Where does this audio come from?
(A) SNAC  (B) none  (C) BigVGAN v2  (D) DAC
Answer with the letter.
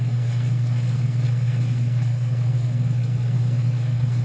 A